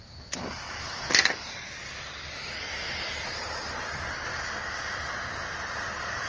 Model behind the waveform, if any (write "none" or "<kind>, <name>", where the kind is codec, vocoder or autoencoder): none